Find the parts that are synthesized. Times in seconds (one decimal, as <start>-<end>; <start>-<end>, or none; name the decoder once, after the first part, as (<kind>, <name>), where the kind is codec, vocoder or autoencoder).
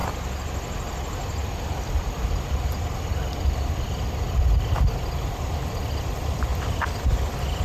4.1-6.5 (vocoder, BigVGAN v2)